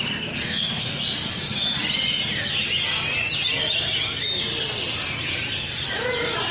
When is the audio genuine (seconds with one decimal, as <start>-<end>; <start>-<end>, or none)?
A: 0.0-0.4; 1.0-6.5